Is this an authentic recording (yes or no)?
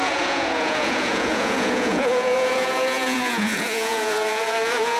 no